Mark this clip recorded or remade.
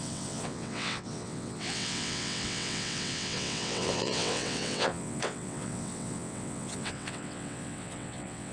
remade